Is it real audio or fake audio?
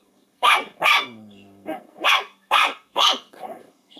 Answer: fake